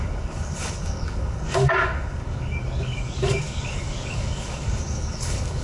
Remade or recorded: remade